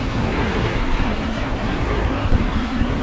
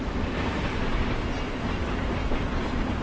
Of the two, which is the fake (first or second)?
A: first